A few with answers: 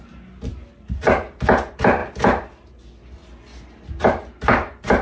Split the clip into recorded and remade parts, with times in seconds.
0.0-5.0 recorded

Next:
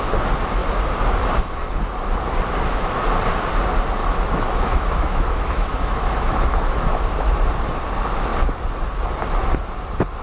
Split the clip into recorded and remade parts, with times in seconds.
0.0-4.0 recorded; 4.0-7.0 remade; 7.0-10.2 recorded

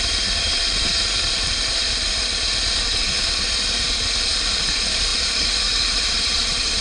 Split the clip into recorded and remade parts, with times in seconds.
0.0-0.5 remade; 0.5-4.6 recorded; 4.6-6.8 remade